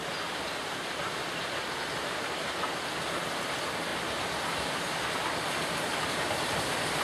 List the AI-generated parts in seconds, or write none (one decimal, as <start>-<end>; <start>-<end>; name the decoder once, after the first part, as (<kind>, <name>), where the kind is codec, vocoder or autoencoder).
none